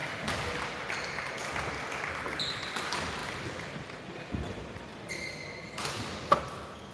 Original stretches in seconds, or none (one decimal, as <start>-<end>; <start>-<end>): 0.0-6.9